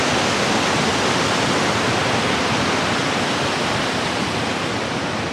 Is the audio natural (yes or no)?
yes